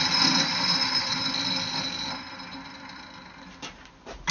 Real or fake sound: real